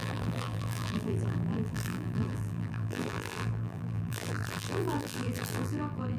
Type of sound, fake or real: fake